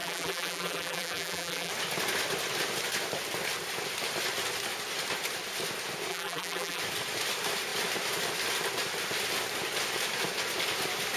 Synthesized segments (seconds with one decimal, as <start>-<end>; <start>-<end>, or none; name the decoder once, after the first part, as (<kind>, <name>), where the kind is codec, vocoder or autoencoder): 0.0-1.7 (vocoder, BigVGAN v2); 6.1-6.8